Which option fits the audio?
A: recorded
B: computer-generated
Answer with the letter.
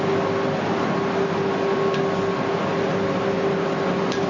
A